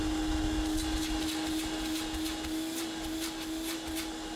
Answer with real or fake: real